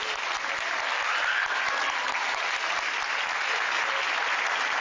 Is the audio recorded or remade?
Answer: recorded